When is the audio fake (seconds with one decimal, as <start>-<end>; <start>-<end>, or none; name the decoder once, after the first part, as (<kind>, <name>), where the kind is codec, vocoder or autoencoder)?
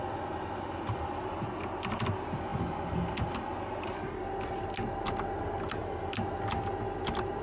none